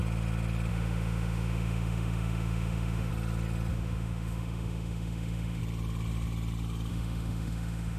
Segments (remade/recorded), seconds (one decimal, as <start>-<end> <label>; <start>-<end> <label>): 0.0-0.7 recorded; 0.7-3.1 remade; 3.1-3.7 recorded; 3.7-5.6 remade; 5.6-6.9 recorded; 6.9-8.0 remade